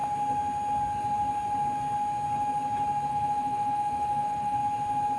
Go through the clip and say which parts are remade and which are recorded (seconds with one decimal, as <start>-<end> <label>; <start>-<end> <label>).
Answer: 0.0-3.1 recorded; 3.1-4.6 remade; 4.6-5.2 recorded